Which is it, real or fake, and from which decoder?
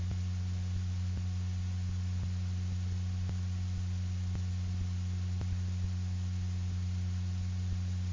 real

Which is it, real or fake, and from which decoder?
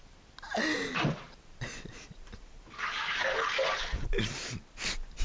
real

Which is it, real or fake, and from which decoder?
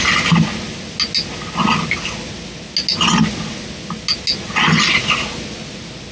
real